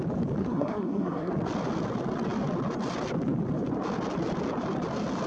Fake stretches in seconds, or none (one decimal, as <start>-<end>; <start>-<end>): 0.4-1.3

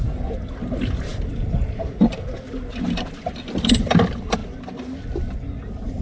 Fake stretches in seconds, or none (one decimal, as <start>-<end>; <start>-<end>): none

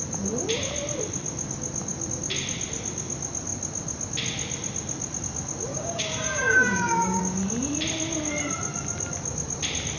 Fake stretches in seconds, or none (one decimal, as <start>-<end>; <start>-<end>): 5.7-7.2

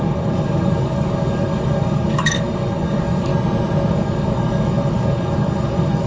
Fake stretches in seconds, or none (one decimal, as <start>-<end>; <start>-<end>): 0.0-3.3; 3.9-6.1

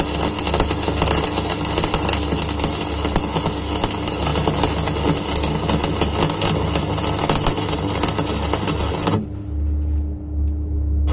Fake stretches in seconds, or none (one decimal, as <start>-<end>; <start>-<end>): none

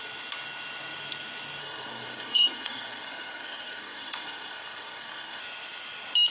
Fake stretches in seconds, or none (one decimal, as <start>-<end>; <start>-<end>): 1.6-5.4

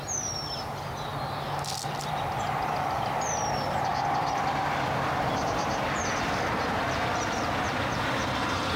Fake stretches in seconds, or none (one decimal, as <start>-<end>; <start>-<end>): 0.0-1.1; 1.9-8.8

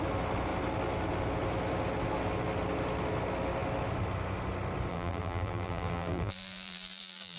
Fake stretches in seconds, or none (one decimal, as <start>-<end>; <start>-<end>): 4.9-7.4